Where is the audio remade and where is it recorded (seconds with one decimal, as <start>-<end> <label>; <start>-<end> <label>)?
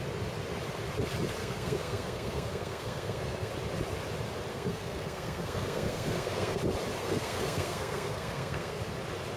0.0-1.4 recorded; 1.4-3.5 remade; 3.5-4.5 recorded; 4.5-6.6 remade; 6.6-7.0 recorded; 7.0-8.8 remade; 8.8-9.4 recorded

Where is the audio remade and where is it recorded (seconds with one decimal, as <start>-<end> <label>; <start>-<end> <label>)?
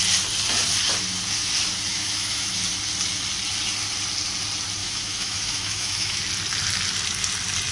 0.0-1.9 recorded; 1.9-2.5 remade; 2.5-4.8 recorded; 4.8-6.2 remade; 6.2-7.7 recorded